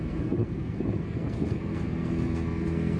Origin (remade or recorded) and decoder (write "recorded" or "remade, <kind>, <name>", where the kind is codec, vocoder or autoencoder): remade, codec, SNAC